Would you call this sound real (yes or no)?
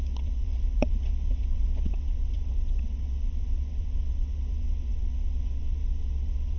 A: no